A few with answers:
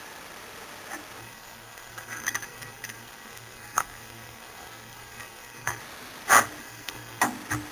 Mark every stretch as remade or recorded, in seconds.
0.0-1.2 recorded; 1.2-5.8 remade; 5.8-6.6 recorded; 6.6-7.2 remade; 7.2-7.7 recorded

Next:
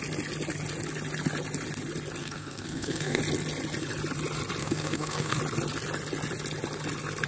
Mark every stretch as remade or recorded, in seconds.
0.0-2.2 recorded; 2.2-3.2 remade; 3.2-4.6 recorded; 4.6-5.4 remade; 5.4-7.3 recorded